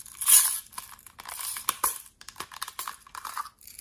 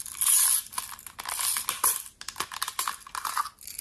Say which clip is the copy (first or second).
first